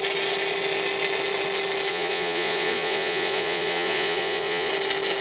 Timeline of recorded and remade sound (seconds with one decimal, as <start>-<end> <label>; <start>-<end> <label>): 0.0-1.9 recorded; 1.9-4.7 remade; 4.7-5.2 recorded